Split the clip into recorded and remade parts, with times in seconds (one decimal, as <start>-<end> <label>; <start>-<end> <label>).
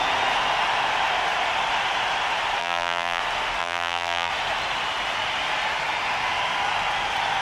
0.0-2.6 recorded; 2.6-3.2 remade; 3.2-3.6 recorded; 3.6-4.3 remade; 4.3-7.4 recorded